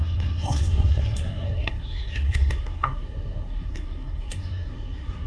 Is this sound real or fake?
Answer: fake